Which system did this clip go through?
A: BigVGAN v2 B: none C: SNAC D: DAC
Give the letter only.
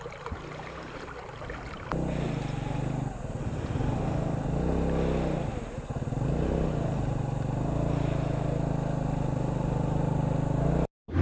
B